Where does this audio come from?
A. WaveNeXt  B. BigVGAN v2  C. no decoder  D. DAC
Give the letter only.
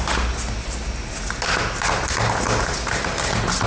C